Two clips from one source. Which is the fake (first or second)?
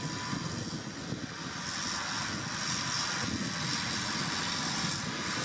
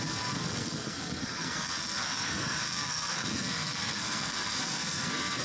second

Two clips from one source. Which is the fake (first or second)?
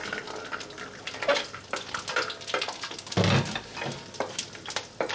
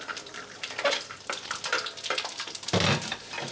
second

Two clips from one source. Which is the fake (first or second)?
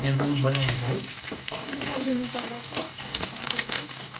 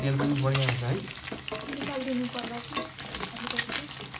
first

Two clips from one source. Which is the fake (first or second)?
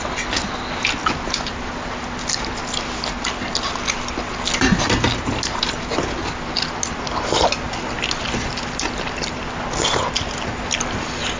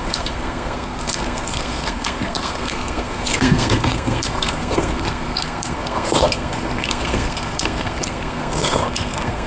second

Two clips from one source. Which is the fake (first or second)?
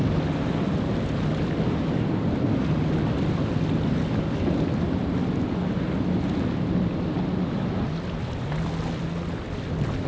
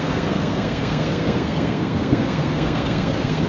second